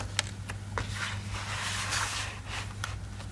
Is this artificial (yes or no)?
no